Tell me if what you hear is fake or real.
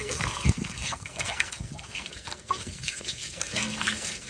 fake